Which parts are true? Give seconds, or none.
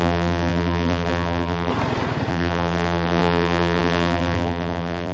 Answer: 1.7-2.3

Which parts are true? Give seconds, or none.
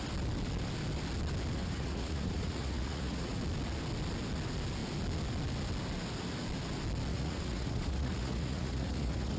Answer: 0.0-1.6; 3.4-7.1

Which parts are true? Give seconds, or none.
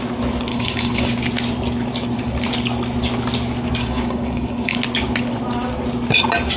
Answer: 0.0-0.5; 1.1-3.8; 4.8-6.6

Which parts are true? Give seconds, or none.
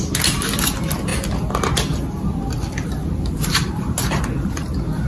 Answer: 0.0-5.1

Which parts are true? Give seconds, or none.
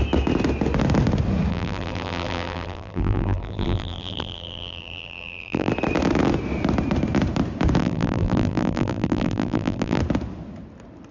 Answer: 0.0-1.5; 5.7-7.8; 10.0-11.1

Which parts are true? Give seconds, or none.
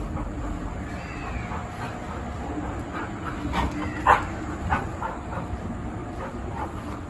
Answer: 0.0-7.1